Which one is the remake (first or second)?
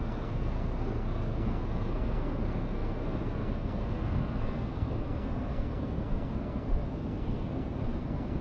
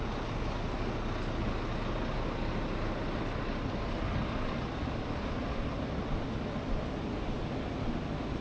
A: first